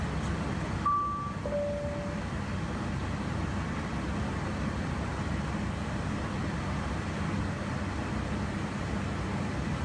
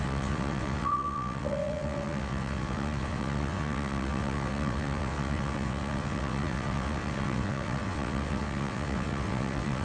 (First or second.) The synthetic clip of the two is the second